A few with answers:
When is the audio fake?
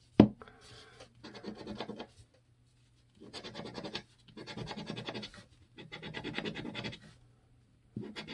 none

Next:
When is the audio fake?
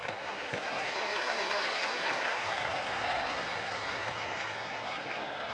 0.0-5.5 (codec, SNAC)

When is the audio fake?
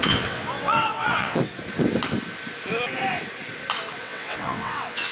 0.0-1.5 (vocoder, WaveNeXt); 4.0-5.1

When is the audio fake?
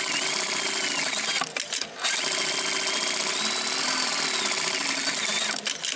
none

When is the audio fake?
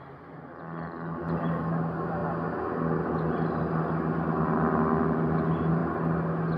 none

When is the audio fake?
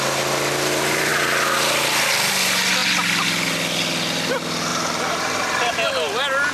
4.7-5.7 (vocoder, BigVGAN v2)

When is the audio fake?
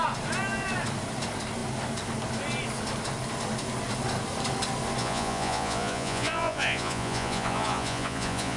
5.0-8.6 (vocoder, Vocos)